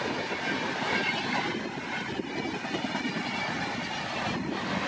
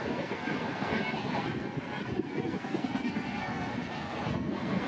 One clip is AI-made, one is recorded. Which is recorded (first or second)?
first